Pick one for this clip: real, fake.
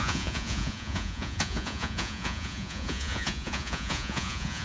fake